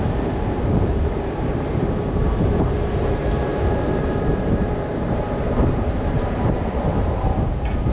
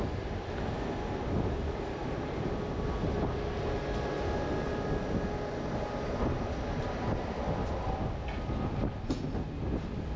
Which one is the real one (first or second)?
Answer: second